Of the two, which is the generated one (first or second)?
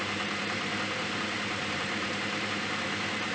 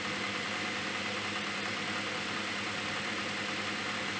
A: first